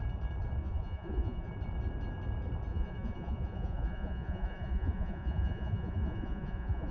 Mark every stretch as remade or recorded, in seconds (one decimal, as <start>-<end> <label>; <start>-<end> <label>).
0.0-0.6 recorded; 0.6-1.5 remade; 1.5-2.7 recorded; 2.7-6.9 remade